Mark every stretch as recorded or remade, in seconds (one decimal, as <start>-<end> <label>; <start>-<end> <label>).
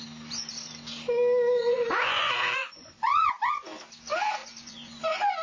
0.0-1.6 recorded; 1.6-3.3 remade; 3.3-4.4 recorded; 4.4-5.0 remade; 5.0-5.4 recorded